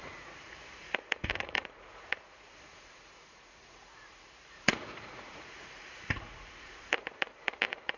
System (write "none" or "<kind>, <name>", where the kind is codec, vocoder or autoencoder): vocoder, Vocos